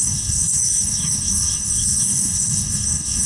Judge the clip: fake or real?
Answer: fake